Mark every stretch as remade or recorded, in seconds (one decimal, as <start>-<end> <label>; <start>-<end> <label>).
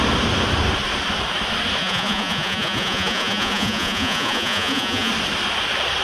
0.0-1.8 recorded; 1.8-5.1 remade; 5.1-6.0 recorded